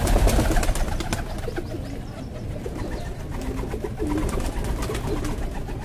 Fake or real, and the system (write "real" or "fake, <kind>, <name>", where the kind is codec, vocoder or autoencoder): real